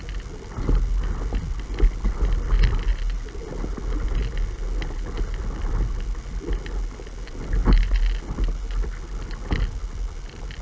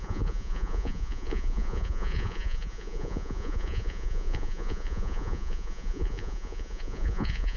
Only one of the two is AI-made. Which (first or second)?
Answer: second